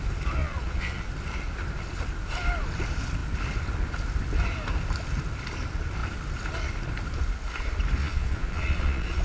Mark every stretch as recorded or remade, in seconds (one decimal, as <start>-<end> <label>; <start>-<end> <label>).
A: 0.0-0.4 recorded; 0.4-1.1 remade; 1.1-8.0 recorded; 8.0-9.2 remade